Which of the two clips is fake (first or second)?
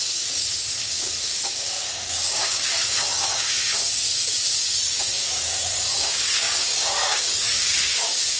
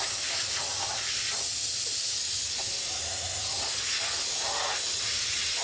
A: first